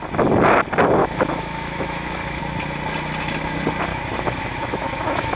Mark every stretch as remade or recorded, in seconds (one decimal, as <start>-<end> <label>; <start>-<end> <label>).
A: 0.0-1.0 recorded; 1.0-2.4 remade; 2.4-3.9 recorded; 3.9-5.4 remade